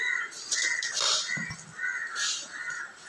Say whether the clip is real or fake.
real